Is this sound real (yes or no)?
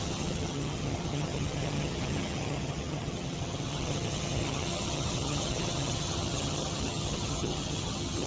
no